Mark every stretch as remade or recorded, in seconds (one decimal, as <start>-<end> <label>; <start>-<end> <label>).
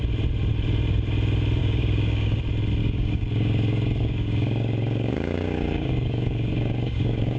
0.0-1.6 recorded; 1.6-2.4 remade; 2.4-2.8 recorded; 2.8-7.4 remade